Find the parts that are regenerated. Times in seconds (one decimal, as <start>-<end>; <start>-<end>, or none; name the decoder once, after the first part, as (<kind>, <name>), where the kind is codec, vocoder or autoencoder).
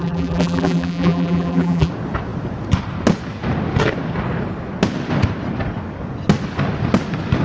0.0-1.9 (vocoder, BigVGAN v2)